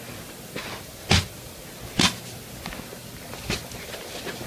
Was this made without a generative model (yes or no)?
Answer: yes